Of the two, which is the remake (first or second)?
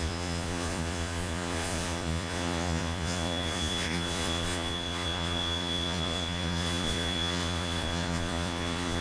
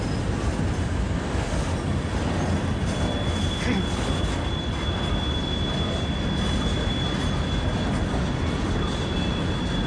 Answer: first